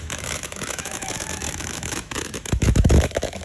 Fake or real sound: fake